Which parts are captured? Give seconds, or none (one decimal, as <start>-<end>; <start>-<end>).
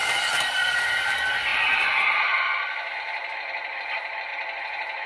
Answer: 0.0-1.5; 2.9-4.3